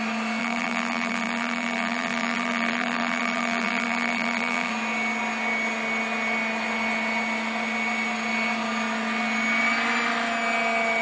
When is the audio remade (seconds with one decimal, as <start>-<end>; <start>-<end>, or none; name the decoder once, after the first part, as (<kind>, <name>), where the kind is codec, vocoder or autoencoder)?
0.4-4.7 (vocoder, BigVGAN v2)